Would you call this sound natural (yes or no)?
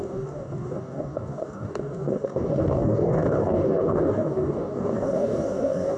no